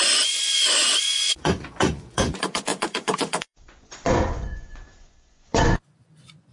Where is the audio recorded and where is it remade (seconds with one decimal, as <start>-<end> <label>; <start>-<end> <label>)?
0.0-6.5 remade